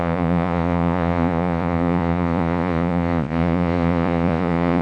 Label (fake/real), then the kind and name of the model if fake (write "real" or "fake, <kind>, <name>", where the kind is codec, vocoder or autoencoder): fake, vocoder, Vocos